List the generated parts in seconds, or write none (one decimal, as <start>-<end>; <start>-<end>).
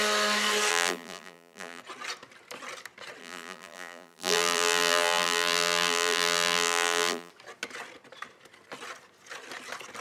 0.7-1.8; 3.2-7.3